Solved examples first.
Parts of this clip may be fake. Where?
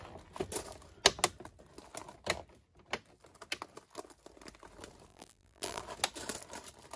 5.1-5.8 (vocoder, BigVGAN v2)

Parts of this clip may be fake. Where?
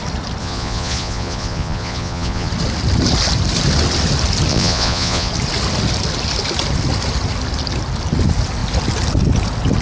0.4-2.5 (vocoder, Vocos); 4.5-5.3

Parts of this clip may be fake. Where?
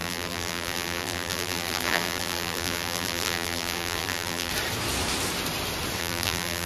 0.0-4.5 (vocoder, BigVGAN v2); 6.0-6.7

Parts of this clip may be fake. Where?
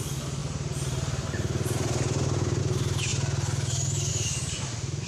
0.0-3.1 (vocoder, BigVGAN v2); 4.1-5.1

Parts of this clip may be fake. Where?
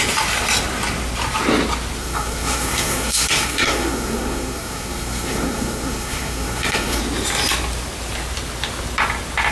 2.0-7.0 (codec, SNAC)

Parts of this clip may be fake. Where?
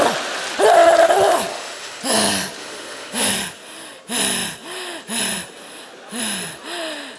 1.5-2.0 (autoencoder, DAC-VAE); 2.6-3.3